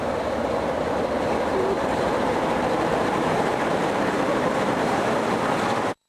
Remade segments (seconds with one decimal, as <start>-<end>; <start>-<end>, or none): 1.5-5.2